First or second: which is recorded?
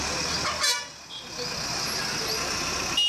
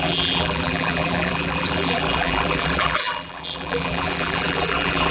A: first